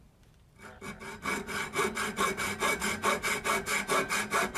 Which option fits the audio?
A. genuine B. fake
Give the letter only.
A